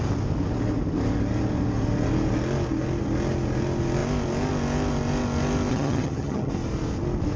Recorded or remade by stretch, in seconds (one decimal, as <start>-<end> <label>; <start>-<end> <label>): 0.0-5.7 recorded; 5.7-6.5 remade; 6.5-7.4 recorded